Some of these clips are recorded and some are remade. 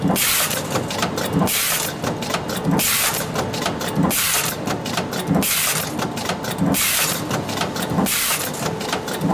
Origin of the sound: recorded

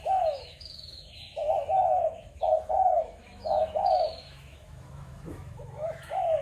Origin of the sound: remade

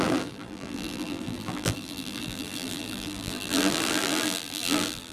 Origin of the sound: remade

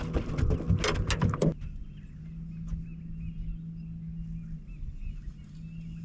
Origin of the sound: recorded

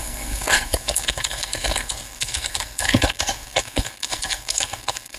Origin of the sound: remade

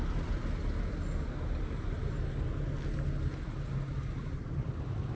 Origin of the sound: recorded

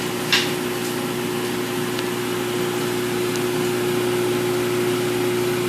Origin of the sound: recorded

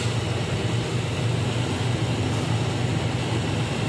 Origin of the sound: recorded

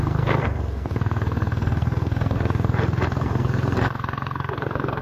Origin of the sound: remade